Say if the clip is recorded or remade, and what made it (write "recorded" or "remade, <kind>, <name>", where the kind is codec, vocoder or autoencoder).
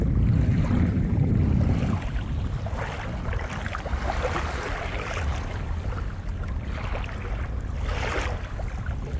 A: recorded